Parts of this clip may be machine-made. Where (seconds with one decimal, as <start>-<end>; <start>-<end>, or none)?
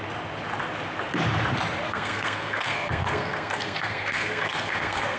1.9-5.2